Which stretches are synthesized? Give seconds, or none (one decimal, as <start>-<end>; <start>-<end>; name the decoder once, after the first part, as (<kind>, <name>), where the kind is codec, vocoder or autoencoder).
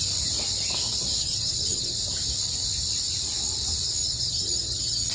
1.2-2.0 (vocoder, HiFi-GAN); 4.0-5.1